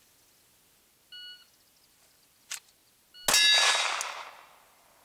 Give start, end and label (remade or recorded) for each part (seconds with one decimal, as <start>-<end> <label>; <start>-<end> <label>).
0.0-5.0 recorded